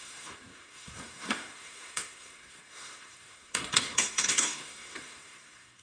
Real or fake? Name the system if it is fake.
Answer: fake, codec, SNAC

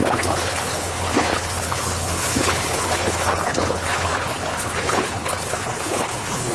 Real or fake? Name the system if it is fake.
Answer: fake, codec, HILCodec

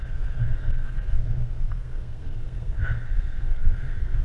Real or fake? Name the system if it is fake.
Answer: fake, codec, SNAC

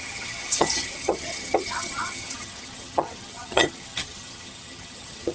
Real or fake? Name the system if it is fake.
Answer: fake, vocoder, HiFi-GAN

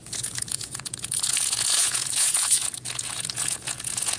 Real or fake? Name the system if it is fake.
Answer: fake, vocoder, Vocos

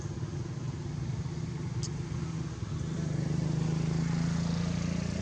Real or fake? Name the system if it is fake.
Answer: real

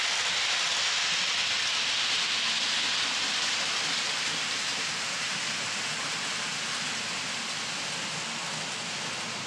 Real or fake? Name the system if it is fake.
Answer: real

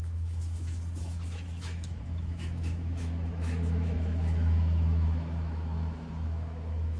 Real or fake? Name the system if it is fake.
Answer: fake, autoencoder, DAC-VAE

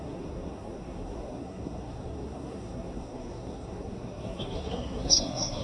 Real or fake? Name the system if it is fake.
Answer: fake, codec, SNAC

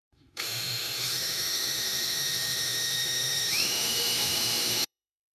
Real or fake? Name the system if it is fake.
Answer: fake, autoencoder, DAC-VAE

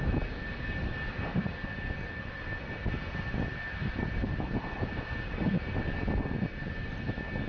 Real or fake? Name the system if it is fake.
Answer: real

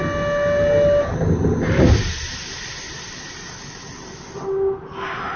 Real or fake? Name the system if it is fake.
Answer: real